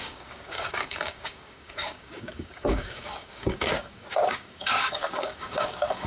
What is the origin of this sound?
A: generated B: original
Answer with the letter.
A